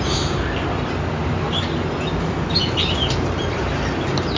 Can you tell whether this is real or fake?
real